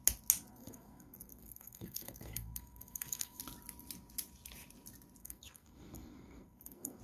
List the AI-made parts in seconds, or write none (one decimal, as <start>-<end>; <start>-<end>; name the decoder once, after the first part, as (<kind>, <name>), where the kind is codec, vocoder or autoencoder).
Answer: 0.5-3.4 (codec, SNAC); 5.2-7.0